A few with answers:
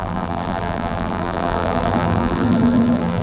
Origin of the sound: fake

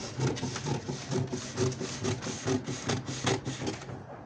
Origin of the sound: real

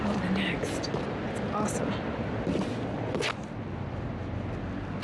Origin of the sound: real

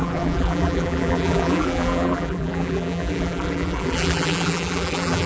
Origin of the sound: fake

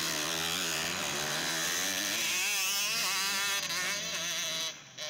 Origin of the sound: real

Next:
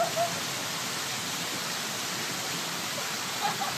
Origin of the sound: real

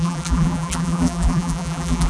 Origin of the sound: fake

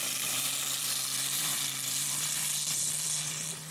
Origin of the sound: fake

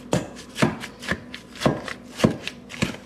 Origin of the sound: fake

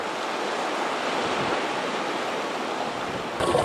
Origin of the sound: real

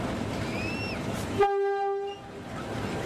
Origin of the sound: real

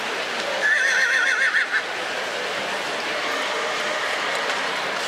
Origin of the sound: fake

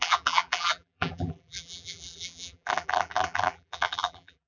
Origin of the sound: fake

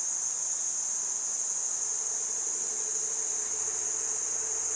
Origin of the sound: real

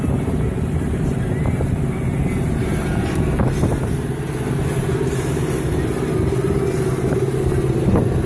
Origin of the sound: real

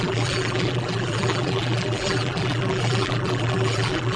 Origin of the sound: fake